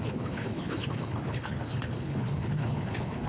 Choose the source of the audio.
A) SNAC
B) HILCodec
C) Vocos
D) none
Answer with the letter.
B